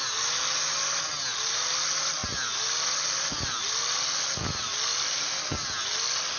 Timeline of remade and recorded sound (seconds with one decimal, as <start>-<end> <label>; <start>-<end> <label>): 0.0-6.4 recorded